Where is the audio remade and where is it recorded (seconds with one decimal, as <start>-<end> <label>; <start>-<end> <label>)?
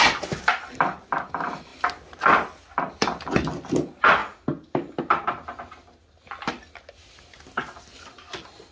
0.0-8.7 recorded